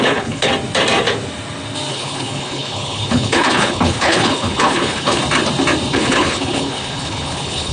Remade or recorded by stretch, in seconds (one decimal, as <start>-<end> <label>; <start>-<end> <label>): 0.0-0.5 remade; 0.5-1.9 recorded; 1.9-5.2 remade; 5.2-5.9 recorded; 5.9-7.7 remade

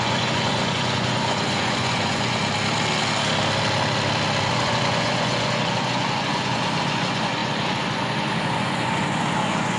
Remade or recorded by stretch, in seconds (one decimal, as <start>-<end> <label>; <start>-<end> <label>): 0.0-2.4 remade; 2.4-4.5 recorded; 4.5-9.8 remade

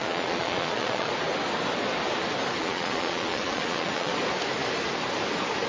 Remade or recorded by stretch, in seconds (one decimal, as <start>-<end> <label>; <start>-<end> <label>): 0.0-1.1 remade; 1.1-2.6 recorded; 2.6-4.1 remade; 4.1-5.7 recorded

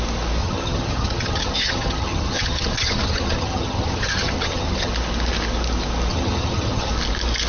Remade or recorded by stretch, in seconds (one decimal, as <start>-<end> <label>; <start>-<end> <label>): 0.0-0.4 recorded; 0.4-4.9 remade; 4.9-6.1 recorded; 6.1-6.9 remade; 6.9-7.5 recorded

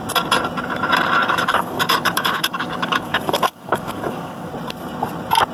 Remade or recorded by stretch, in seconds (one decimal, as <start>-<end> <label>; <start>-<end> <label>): 0.0-1.2 recorded; 1.2-4.5 remade; 4.5-5.5 recorded

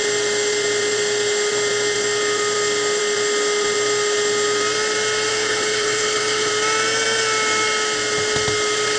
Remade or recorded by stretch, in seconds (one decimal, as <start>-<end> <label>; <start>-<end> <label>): 0.0-5.3 recorded; 5.3-6.5 remade; 6.5-9.0 recorded

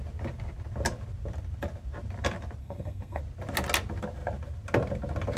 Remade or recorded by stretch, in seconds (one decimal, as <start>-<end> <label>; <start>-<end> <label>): 0.0-2.6 recorded; 2.6-3.2 remade; 3.2-5.4 recorded